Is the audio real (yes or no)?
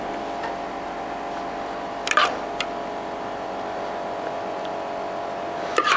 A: yes